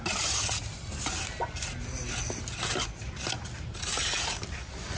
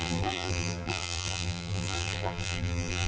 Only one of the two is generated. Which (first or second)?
second